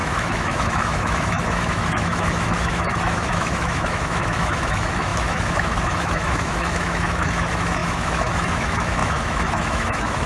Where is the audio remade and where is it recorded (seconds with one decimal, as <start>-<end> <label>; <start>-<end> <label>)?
0.0-10.3 remade